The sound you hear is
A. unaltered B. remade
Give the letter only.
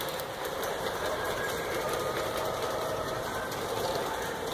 B